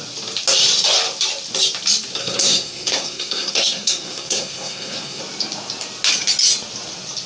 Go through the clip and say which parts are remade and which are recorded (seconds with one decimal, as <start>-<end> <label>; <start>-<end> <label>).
0.0-2.2 recorded; 2.2-5.2 remade; 5.2-7.3 recorded